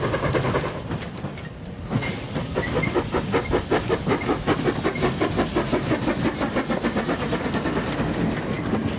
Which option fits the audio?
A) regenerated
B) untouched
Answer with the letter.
B